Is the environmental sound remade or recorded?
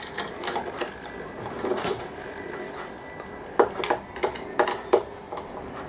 recorded